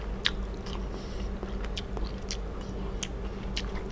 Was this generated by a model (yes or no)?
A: no